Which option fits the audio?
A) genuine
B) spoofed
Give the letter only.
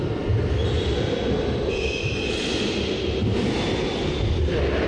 A